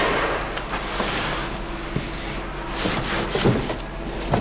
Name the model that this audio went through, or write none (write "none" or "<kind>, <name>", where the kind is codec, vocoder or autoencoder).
none